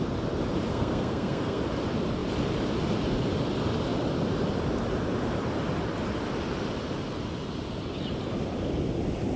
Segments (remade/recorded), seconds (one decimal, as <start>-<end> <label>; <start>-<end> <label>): 0.0-0.7 recorded; 0.7-1.6 remade; 1.6-9.4 recorded